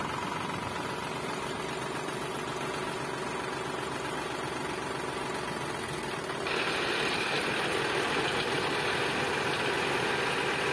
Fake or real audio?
real